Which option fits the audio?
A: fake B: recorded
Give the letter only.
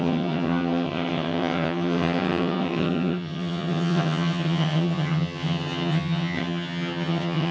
A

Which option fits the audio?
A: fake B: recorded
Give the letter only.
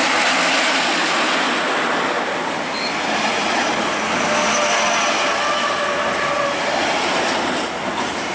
B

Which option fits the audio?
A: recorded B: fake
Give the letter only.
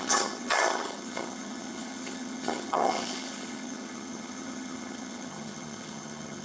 B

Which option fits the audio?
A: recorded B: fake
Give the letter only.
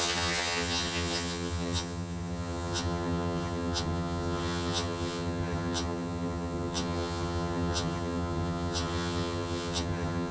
B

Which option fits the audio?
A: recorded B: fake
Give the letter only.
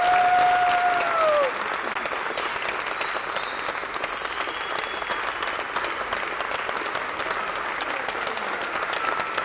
A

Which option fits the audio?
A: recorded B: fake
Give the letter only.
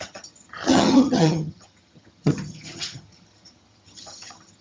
B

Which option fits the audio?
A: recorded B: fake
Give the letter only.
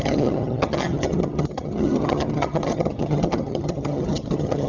B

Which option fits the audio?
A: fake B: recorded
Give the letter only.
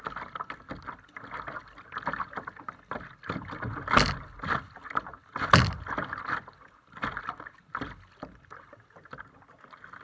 B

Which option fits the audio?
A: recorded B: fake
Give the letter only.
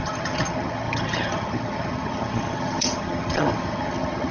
B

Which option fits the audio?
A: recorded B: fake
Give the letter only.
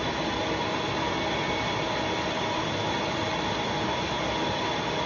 A